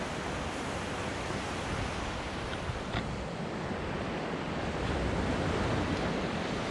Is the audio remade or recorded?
recorded